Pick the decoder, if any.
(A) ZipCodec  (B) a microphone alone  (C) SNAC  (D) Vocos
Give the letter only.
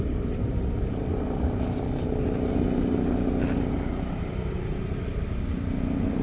B